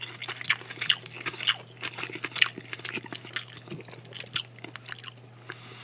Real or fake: real